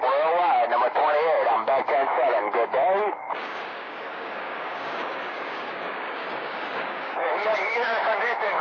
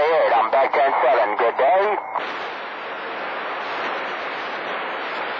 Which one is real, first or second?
second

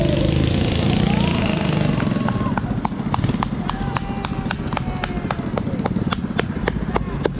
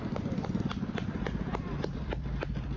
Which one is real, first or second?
first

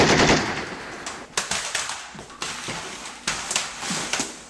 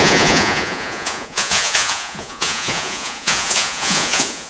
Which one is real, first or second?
first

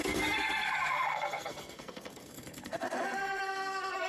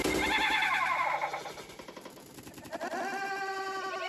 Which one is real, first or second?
second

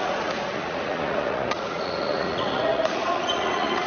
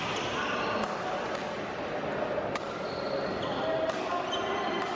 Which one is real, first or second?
second